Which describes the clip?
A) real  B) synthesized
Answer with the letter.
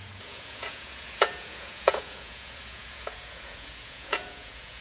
B